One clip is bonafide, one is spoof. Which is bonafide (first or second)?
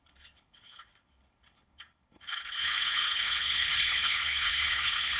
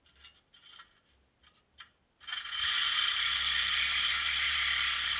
second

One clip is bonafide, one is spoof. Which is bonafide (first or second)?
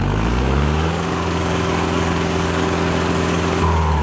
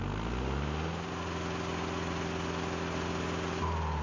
second